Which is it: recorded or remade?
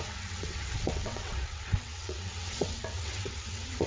remade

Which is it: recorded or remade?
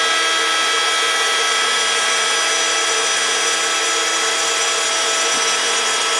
recorded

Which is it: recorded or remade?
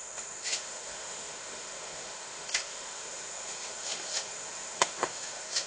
remade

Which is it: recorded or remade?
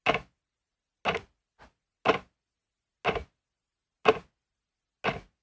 recorded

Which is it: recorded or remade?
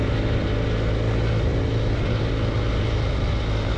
recorded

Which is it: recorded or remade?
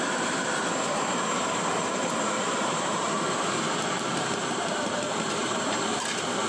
remade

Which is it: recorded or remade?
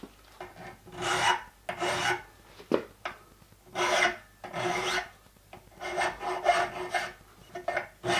recorded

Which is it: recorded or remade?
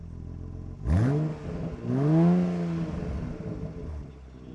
recorded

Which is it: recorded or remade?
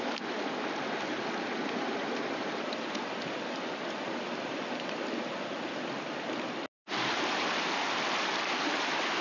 recorded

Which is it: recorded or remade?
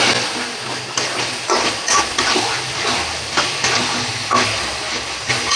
recorded